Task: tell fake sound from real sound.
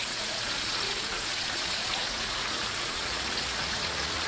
fake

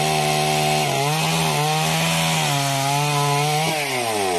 real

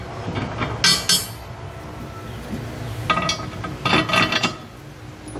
real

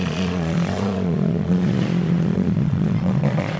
fake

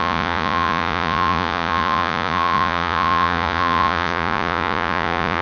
fake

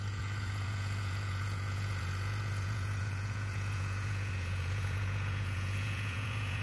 fake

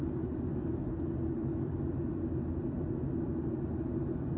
real